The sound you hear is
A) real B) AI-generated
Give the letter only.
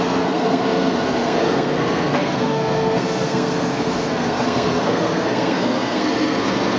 B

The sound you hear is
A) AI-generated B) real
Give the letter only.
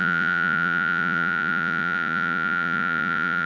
A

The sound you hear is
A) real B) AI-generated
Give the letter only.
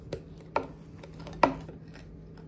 A